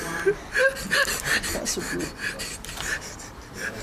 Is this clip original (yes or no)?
no